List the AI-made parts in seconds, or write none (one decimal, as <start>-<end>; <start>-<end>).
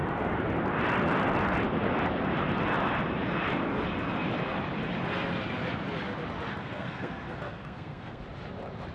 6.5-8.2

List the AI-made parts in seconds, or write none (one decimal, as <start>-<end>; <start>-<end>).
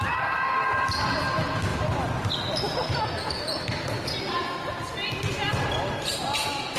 none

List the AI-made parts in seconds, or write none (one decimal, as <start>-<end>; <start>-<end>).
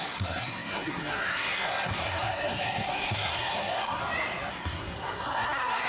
0.0-4.0; 4.5-5.9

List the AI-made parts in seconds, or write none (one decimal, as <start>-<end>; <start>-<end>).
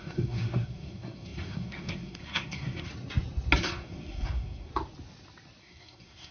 0.0-2.9; 3.6-4.7; 5.6-6.3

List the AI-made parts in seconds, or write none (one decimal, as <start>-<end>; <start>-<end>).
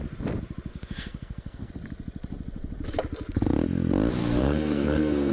0.7-1.7; 4.2-5.3